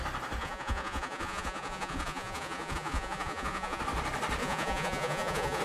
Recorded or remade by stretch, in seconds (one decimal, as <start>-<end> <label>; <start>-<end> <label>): 0.0-0.4 recorded; 0.4-3.8 remade; 3.8-4.4 recorded; 4.4-5.6 remade